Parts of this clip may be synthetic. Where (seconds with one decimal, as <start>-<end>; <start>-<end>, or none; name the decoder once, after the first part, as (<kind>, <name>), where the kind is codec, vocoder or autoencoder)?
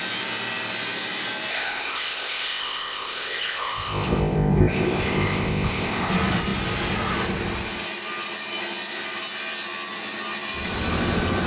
1.5-6.1 (codec, ZipCodec)